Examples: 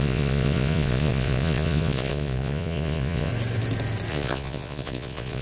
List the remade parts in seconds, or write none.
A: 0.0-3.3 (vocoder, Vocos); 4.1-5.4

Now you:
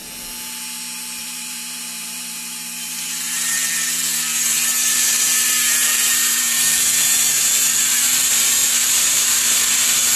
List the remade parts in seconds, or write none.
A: 1.2-10.2 (vocoder, BigVGAN v2)

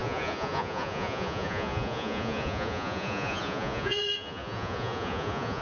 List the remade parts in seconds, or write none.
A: 0.0-5.6 (vocoder, Vocos)

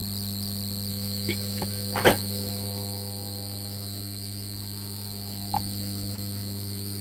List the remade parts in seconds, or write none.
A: 0.9-7.0 (autoencoder, DAC-VAE)

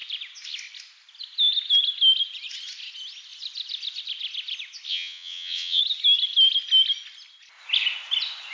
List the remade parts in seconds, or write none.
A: 4.9-5.8 (vocoder, WaveNeXt)